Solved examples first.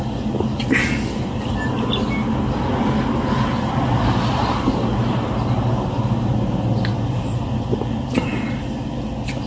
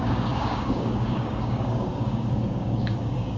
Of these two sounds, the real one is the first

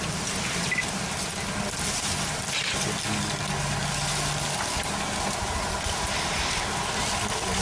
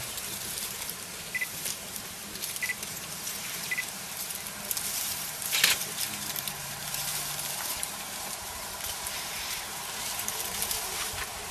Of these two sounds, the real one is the first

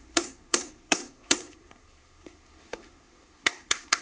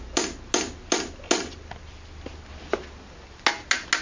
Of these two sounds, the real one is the second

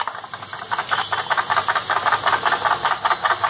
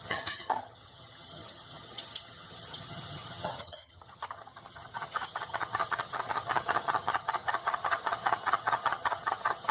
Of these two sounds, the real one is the first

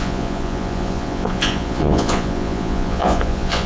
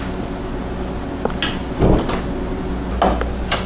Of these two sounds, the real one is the second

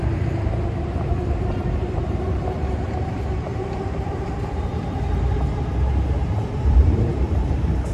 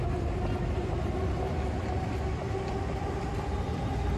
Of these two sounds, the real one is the second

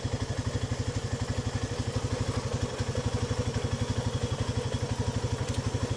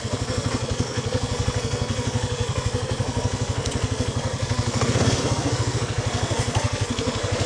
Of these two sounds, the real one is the first